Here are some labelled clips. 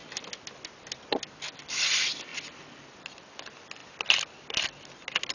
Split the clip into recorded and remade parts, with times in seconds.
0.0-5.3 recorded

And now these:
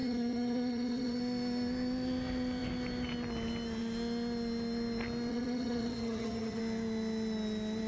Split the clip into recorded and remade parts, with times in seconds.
0.0-1.2 remade; 1.2-5.3 recorded; 5.3-6.6 remade; 6.6-7.9 recorded

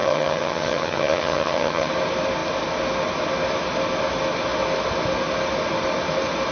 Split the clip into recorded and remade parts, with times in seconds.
0.0-1.9 remade; 1.9-6.5 recorded

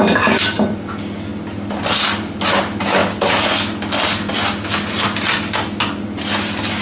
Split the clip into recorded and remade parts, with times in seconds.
0.0-6.8 recorded

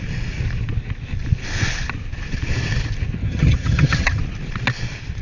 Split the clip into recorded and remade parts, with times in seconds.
0.0-3.2 recorded; 3.2-4.2 remade; 4.2-5.2 recorded

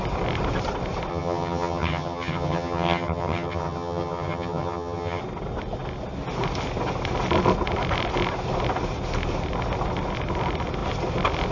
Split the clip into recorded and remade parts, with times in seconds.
0.0-1.1 recorded; 1.1-5.2 remade; 5.2-11.5 recorded

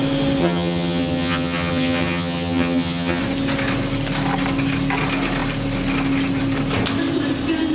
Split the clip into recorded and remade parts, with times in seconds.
0.0-0.4 recorded; 0.4-3.2 remade; 3.2-7.7 recorded

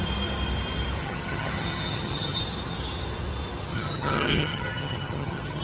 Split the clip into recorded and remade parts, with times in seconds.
0.0-1.0 recorded; 1.0-2.4 remade; 2.4-3.7 recorded; 3.7-5.6 remade